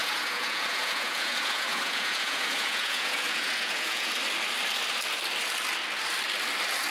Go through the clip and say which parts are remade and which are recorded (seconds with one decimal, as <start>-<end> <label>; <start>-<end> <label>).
0.0-4.1 remade; 4.1-6.9 recorded